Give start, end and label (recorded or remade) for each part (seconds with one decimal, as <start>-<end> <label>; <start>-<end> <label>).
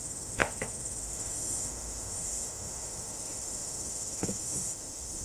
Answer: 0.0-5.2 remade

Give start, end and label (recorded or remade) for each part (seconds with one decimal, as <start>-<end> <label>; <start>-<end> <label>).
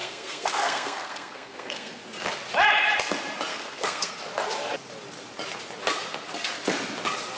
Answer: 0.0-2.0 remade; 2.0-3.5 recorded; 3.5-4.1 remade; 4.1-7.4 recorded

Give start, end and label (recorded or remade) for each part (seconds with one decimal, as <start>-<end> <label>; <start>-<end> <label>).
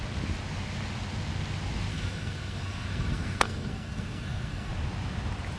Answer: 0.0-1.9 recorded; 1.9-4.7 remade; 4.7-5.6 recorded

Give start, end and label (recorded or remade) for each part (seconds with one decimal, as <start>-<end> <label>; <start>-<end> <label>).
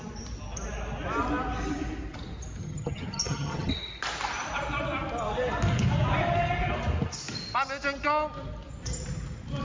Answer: 0.0-2.6 recorded; 2.6-3.7 remade; 3.7-9.6 recorded